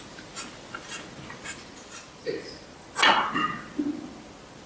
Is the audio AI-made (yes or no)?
no